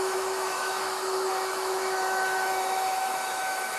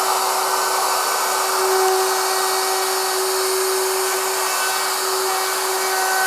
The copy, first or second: first